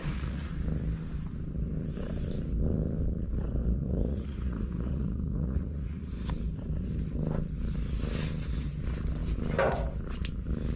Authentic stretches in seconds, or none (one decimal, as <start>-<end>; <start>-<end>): 0.5-3.6; 6.1-10.8